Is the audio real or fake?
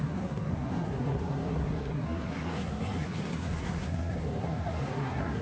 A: fake